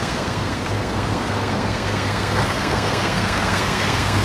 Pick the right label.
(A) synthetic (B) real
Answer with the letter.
A